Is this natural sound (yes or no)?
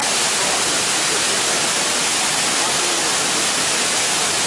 yes